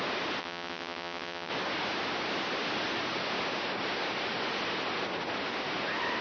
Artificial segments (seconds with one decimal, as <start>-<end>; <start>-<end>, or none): 0.4-1.5